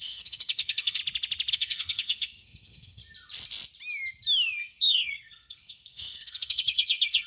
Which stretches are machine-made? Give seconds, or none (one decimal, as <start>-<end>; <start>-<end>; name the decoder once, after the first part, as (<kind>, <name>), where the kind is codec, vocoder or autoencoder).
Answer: 0.0-1.0 (codec, SNAC); 1.5-3.0; 4.6-7.3